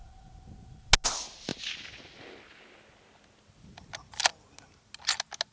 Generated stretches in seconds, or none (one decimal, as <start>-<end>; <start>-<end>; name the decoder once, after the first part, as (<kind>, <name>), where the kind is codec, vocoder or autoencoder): none